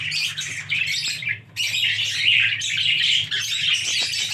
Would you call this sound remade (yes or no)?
no